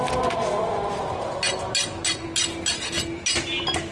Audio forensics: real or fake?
real